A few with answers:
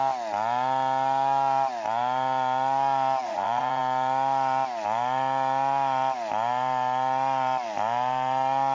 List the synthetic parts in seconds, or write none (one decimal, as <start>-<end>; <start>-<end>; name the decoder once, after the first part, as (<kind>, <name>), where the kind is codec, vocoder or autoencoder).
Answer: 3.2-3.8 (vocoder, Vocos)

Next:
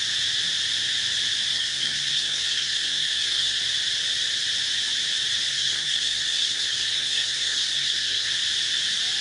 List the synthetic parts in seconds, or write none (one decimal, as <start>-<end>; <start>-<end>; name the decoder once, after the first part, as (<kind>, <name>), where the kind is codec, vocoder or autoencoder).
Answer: 1.5-3.6 (codec, SNAC); 5.5-8.3

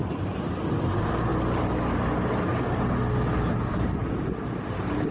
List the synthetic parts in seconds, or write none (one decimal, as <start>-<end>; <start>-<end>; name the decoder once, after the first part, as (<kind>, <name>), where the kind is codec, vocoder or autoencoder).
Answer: 0.0-1.3 (vocoder, BigVGAN v2); 3.9-5.1